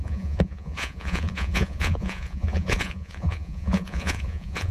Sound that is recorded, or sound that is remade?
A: remade